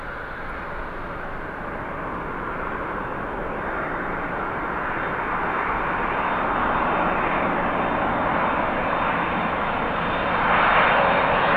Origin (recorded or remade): recorded